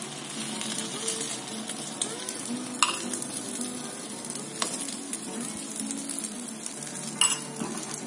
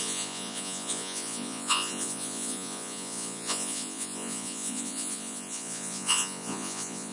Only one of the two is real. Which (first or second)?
first